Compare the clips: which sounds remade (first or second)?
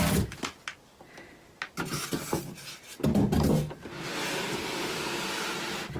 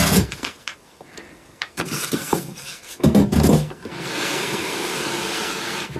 second